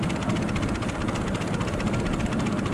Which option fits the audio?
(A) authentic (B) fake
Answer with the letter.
A